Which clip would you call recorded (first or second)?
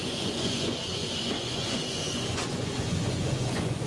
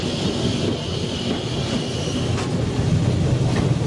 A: second